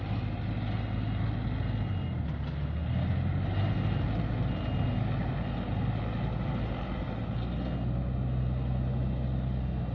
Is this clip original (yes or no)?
yes